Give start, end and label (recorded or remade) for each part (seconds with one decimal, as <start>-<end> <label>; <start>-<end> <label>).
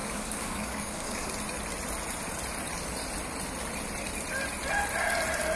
0.0-1.3 remade; 1.3-5.6 recorded